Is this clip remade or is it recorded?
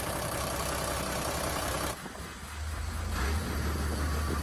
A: recorded